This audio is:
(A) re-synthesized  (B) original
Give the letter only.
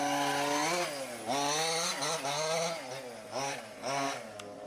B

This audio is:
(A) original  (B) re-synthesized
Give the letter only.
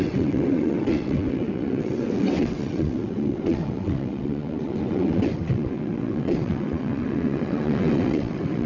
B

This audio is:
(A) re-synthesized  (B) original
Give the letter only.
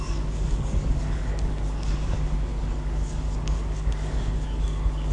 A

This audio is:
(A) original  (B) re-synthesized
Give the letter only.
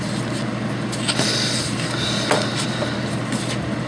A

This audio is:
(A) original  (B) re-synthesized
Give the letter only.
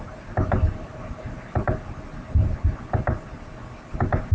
A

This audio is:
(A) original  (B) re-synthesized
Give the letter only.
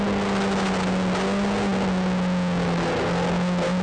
A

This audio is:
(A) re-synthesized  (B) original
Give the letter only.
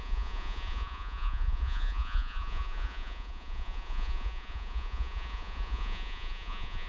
A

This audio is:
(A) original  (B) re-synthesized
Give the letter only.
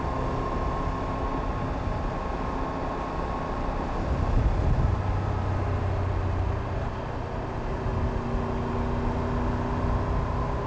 A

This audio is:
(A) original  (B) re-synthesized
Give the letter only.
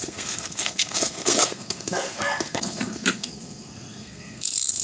B